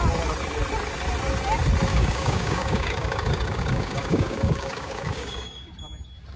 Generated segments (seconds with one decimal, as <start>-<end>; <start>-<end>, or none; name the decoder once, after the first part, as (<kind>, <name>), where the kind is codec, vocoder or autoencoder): 1.9-5.7 (codec, DAC)